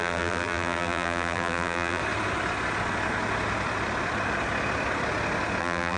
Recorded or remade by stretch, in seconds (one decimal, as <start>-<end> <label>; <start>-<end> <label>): 0.0-2.0 remade; 2.0-5.6 recorded; 5.6-6.0 remade